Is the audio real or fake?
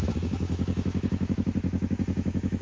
fake